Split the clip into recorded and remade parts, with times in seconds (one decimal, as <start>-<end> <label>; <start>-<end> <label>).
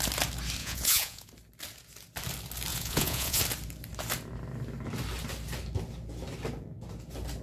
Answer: 0.0-0.6 recorded; 0.6-1.3 remade; 1.3-2.7 recorded; 2.7-3.4 remade; 3.4-7.4 recorded